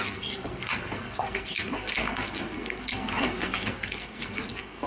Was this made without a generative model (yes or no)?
no